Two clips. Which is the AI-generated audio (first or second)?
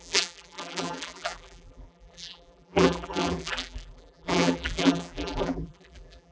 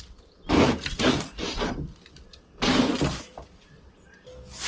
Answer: first